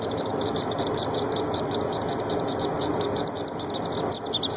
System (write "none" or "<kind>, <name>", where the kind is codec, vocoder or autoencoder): none